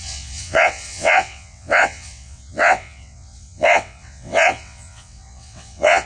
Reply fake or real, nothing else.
fake